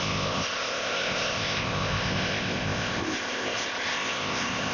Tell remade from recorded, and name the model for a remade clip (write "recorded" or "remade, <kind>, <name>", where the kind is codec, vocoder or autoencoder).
remade, codec, ZipCodec